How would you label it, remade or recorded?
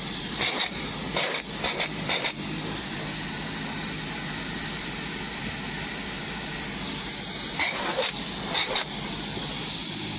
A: remade